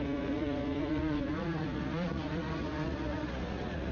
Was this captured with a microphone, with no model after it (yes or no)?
no